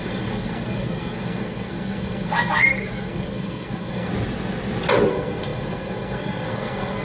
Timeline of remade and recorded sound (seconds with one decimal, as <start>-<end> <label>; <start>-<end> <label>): 0.0-4.1 remade; 4.1-5.1 recorded; 5.1-7.0 remade